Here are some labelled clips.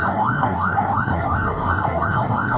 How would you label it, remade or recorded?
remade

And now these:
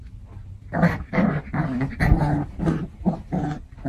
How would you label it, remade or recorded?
recorded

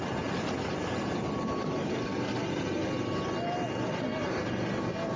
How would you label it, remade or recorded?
recorded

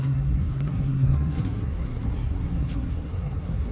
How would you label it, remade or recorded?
remade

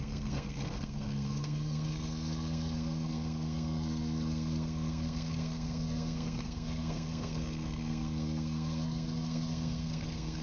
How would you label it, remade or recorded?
remade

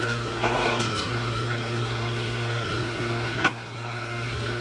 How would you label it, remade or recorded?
remade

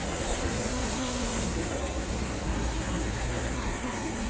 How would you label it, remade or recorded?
remade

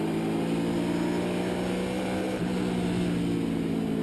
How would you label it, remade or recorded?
recorded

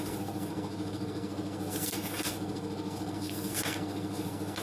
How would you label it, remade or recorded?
remade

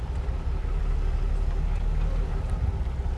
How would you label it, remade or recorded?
recorded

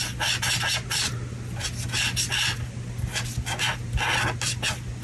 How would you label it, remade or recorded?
recorded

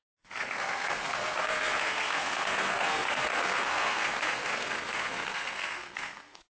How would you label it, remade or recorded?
remade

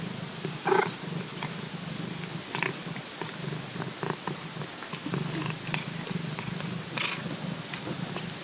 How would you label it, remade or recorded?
recorded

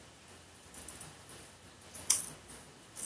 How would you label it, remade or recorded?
recorded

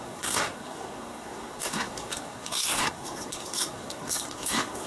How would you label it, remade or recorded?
remade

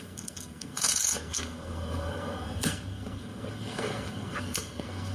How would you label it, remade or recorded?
remade